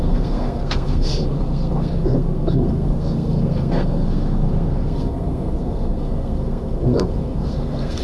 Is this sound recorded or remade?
remade